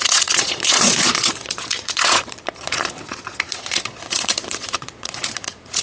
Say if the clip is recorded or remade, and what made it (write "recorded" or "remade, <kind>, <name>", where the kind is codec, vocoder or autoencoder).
remade, vocoder, Vocos